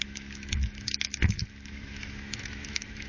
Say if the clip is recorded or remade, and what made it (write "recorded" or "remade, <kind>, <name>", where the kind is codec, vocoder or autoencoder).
remade, autoencoder, DAC-VAE